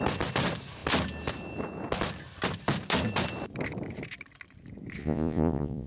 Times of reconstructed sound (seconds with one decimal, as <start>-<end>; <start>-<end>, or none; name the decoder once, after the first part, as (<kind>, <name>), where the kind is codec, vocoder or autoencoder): 5.0-5.9 (vocoder, Vocos)